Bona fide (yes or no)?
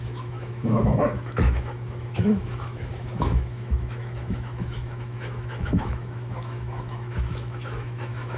no